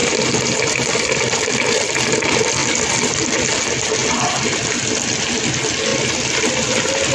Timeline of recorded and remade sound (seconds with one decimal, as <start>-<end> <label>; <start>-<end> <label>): 0.0-1.5 remade; 1.5-2.6 recorded; 2.6-3.5 remade; 3.5-5.9 recorded; 5.9-7.1 remade